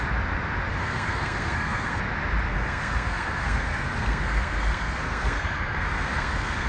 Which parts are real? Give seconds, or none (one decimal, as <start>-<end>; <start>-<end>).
0.0-0.7; 2.0-2.5